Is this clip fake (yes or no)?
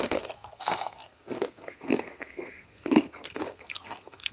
yes